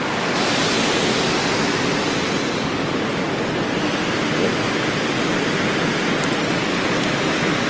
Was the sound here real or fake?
real